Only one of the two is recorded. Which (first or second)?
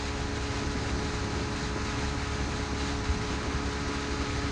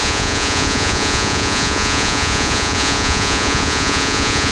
first